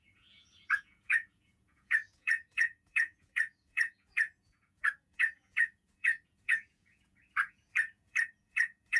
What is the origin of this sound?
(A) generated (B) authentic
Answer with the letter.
A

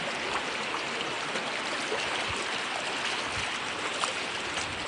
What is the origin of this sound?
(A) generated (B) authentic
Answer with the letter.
B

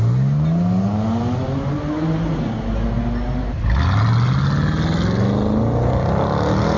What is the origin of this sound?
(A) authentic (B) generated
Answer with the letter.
A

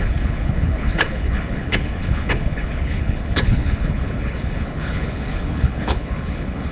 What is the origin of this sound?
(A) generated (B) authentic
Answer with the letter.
A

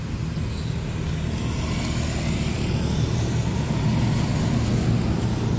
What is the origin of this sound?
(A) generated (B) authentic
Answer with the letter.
B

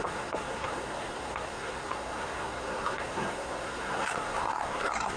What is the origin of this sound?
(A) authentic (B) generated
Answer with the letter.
B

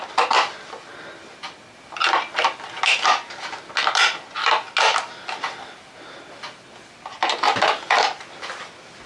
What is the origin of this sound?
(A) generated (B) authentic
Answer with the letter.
B